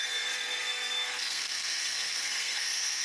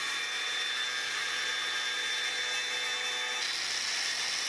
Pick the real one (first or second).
second